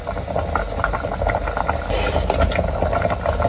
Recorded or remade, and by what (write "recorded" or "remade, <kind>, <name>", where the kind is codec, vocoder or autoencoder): recorded